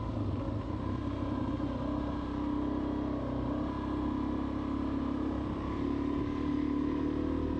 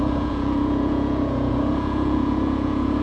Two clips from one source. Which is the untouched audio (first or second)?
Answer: first